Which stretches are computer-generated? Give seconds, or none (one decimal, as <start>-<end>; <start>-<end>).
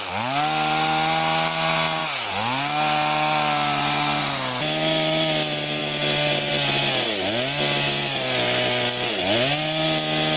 none